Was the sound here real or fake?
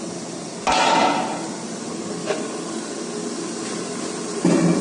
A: real